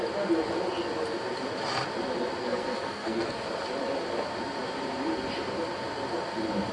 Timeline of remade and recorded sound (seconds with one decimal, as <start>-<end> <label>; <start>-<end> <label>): 0.0-2.4 recorded; 2.4-3.4 remade; 3.4-6.7 recorded